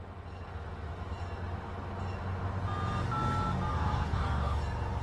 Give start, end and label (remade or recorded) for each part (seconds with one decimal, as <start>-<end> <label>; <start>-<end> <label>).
0.0-3.7 recorded; 3.7-4.6 remade; 4.6-5.0 recorded